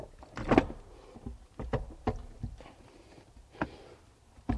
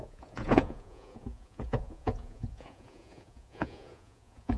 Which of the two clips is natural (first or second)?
first